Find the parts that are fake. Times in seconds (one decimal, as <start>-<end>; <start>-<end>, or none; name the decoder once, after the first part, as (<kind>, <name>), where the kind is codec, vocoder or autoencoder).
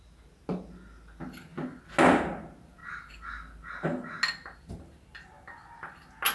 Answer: none